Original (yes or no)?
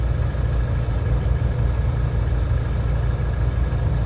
yes